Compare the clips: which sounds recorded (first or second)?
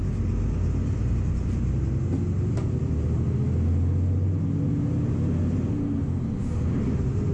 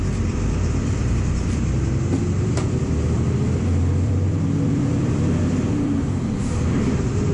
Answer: first